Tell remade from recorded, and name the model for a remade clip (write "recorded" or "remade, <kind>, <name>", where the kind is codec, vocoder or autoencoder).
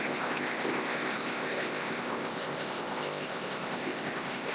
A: remade, codec, ZipCodec